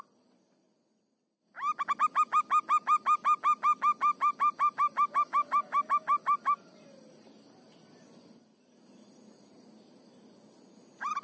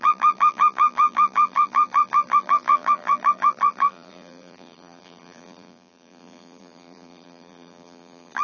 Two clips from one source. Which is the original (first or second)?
first